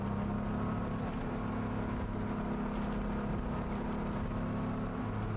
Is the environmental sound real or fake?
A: real